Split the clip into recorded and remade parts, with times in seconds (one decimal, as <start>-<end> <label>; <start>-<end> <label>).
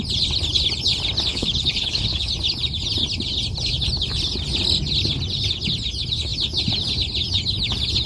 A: 0.0-1.3 recorded; 1.3-2.3 remade; 2.3-8.1 recorded